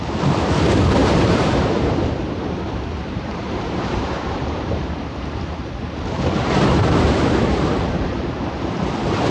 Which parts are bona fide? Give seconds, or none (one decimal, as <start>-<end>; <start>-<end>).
0.0-1.0; 5.6-9.3